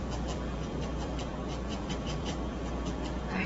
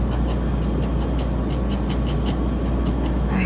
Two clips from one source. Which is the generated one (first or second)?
first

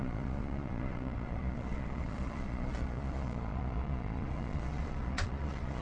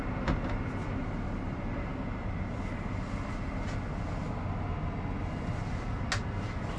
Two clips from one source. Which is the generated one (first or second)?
first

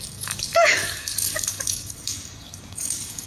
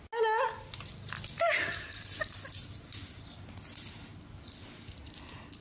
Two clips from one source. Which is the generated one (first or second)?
first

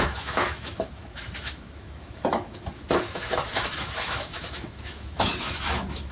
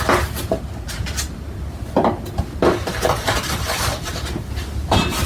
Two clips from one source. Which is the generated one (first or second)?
first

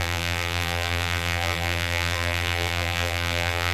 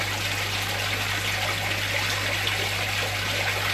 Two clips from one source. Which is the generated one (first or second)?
first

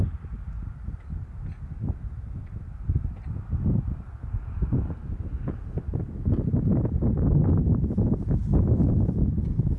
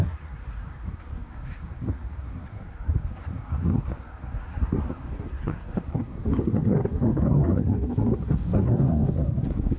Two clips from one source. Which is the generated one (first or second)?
second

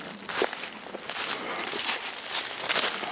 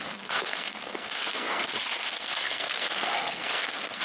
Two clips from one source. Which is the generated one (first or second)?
second